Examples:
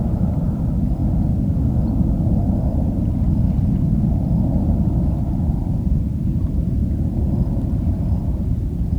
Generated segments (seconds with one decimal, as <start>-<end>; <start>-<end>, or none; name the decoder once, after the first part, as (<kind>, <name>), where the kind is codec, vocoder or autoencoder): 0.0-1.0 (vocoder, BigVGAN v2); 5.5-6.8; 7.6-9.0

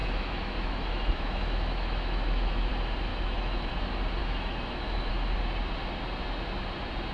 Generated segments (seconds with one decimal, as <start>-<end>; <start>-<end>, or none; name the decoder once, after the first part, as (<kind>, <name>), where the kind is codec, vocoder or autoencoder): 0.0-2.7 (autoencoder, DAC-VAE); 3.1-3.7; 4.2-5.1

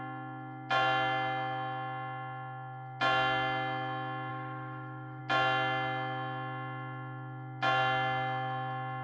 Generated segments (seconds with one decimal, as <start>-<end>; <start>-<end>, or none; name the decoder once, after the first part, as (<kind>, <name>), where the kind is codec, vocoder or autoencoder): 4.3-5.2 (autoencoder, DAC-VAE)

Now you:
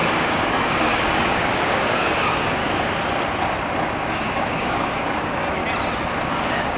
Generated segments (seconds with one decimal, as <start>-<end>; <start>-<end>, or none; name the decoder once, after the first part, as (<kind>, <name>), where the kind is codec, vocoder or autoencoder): 0.0-2.6 (codec, DAC); 4.1-5.6; 6.3-6.8

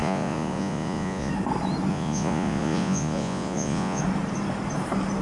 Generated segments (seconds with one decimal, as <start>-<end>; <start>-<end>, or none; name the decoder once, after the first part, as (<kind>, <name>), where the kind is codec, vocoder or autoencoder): 0.0-1.3 (vocoder, Vocos); 1.9-4.0